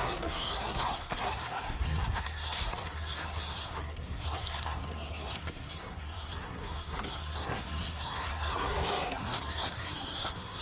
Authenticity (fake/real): fake